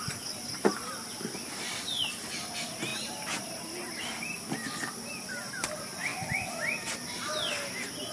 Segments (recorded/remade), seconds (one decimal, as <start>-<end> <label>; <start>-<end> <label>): 0.0-2.9 recorded; 2.9-3.9 remade; 3.9-8.1 recorded